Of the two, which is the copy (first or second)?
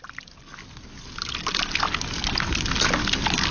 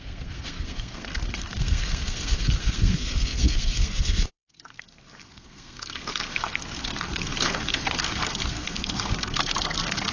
second